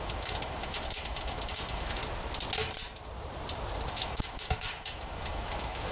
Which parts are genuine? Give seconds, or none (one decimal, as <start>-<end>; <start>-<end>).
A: 2.0-3.9